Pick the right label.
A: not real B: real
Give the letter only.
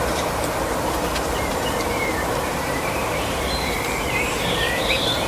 A